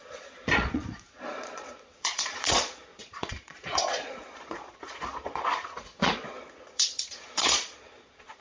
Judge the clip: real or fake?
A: fake